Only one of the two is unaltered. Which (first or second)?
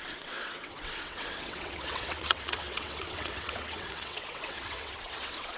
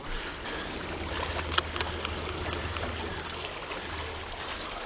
second